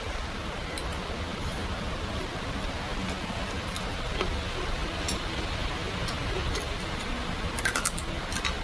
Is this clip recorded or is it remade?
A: recorded